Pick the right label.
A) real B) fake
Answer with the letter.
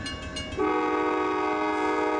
A